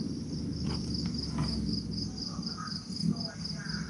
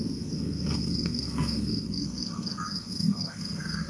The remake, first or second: second